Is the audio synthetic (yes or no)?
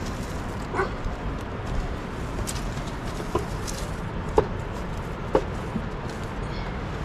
no